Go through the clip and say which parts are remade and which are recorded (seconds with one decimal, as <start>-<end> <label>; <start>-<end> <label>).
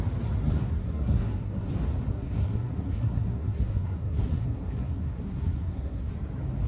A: 0.0-0.5 recorded; 0.5-1.7 remade; 1.7-2.1 recorded; 2.1-6.1 remade; 6.1-6.7 recorded